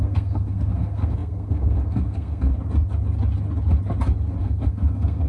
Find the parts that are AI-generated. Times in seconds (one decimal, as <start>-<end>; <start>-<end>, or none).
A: 0.0-2.5; 4.4-5.3